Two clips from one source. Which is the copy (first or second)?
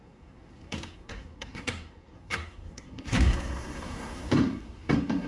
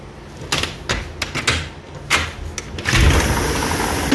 first